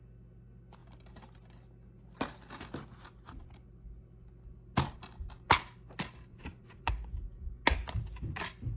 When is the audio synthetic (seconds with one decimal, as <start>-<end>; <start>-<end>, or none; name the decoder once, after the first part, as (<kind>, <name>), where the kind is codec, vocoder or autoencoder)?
6.3-6.9 (vocoder, Vocos)